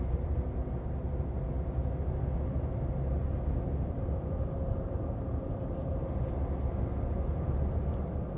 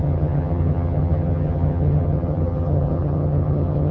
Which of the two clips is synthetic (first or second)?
second